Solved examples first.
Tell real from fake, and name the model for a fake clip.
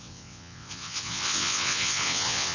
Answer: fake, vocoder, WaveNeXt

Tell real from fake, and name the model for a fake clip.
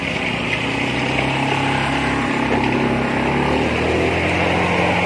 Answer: real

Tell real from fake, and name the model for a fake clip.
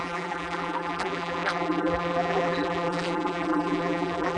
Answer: fake, vocoder, BigVGAN v2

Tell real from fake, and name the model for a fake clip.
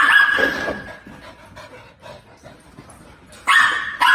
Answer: real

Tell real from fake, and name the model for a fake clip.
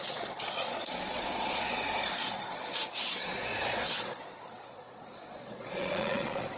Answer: fake, vocoder, Vocos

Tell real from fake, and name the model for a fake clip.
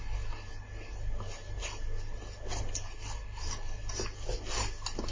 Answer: real